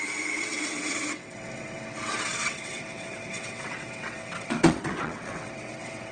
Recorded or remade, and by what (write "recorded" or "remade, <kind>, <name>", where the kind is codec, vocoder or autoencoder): remade, vocoder, WaveNeXt